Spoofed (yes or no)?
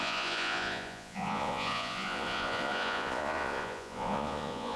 yes